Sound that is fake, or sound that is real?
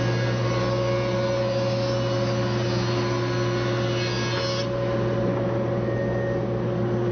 real